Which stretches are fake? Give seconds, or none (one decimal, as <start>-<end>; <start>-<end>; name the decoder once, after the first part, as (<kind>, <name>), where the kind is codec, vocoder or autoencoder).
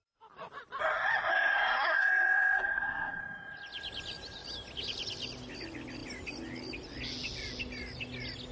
1.3-3.2 (codec, SNAC)